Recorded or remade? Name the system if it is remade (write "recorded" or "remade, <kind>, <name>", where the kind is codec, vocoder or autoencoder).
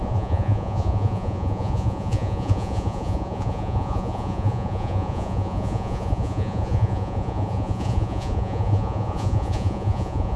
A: remade, vocoder, Vocos